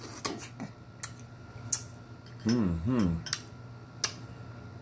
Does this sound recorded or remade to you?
recorded